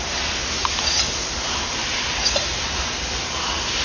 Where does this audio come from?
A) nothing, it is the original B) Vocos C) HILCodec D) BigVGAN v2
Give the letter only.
A